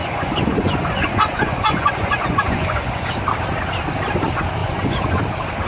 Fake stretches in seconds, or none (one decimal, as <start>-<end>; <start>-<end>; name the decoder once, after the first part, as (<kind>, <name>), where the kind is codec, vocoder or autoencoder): 0.0-3.1 (vocoder, Vocos); 4.6-5.2